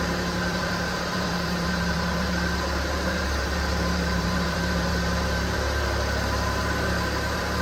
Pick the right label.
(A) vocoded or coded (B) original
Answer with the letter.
A